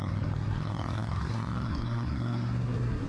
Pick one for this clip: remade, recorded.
remade